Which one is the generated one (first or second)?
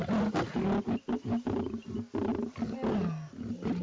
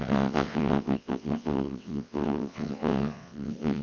second